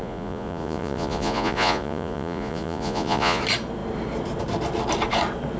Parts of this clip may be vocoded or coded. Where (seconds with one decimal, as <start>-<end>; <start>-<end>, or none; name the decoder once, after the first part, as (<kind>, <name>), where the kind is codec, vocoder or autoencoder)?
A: 0.0-3.4 (vocoder, Vocos)